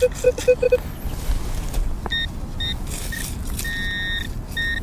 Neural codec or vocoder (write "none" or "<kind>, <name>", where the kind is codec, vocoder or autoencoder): none